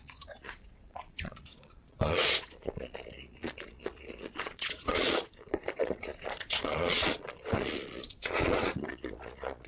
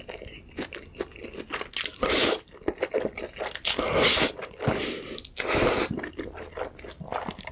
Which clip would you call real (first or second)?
second